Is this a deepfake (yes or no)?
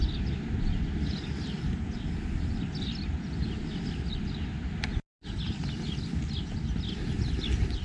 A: no